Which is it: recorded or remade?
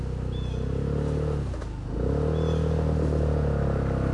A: recorded